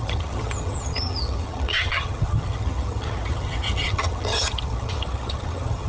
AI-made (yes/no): yes